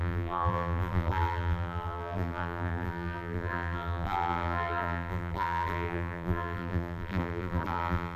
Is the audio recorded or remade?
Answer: remade